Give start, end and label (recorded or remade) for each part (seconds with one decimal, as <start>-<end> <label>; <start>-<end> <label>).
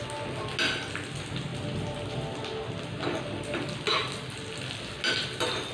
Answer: 0.0-5.7 recorded